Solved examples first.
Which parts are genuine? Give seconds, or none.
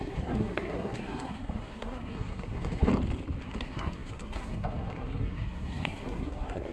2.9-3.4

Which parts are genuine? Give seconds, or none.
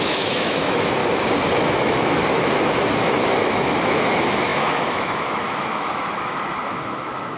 1.0-1.5; 2.2-3.2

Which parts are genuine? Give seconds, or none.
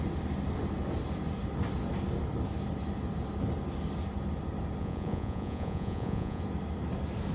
0.0-4.8; 6.4-7.3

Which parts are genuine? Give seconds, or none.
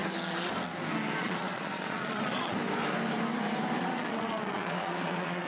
0.0-1.2; 2.6-3.8